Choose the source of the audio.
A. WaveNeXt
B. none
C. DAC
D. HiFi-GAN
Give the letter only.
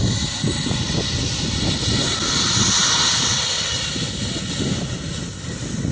B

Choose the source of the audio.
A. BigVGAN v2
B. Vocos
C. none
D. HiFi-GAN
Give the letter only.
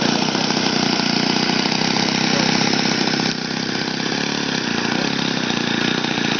C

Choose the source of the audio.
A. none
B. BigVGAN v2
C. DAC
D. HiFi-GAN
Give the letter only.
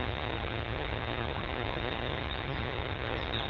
D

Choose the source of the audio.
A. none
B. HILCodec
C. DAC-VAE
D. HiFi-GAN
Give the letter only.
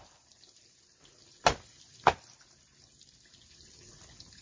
A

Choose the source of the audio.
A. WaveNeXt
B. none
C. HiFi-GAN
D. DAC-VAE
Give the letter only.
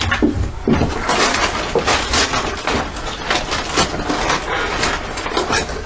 B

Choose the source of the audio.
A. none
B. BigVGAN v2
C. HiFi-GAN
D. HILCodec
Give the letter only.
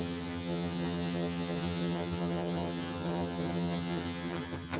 C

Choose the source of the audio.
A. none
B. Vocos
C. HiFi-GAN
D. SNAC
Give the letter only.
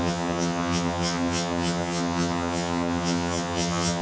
C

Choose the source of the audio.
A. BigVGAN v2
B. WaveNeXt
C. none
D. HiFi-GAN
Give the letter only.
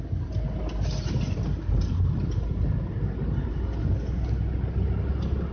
C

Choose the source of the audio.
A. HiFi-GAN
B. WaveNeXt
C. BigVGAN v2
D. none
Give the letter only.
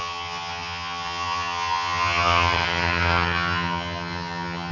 A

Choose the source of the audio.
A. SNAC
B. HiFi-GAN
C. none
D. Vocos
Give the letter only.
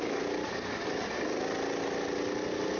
C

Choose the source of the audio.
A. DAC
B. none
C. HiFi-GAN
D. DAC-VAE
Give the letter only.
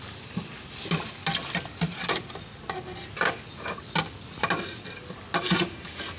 B